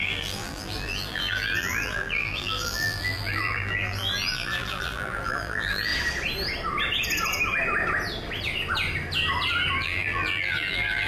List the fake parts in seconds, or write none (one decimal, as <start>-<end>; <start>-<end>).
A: 0.0-5.9; 9.8-11.1